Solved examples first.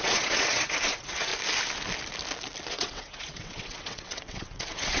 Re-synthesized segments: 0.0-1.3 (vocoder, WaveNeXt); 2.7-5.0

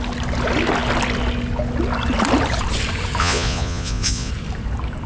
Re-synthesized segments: 3.2-4.3 (vocoder, Vocos)

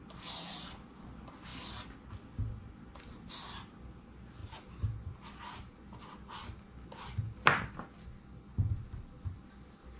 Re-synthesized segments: none

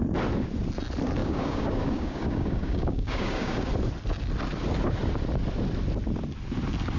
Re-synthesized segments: 1.2-3.7 (codec, DAC)

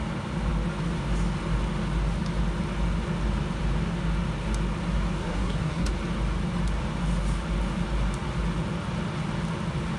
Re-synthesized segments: 5.2-5.9 (codec, SNAC)

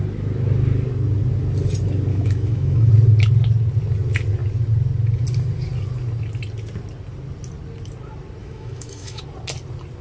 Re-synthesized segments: 2.1-2.9 (autoencoder, DAC-VAE); 8.4-9.2

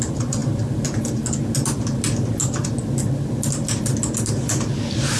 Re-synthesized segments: none

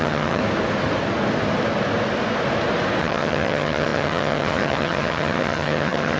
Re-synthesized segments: 0.0-0.4 (vocoder, HiFi-GAN); 3.0-6.2